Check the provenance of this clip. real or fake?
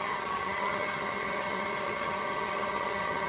fake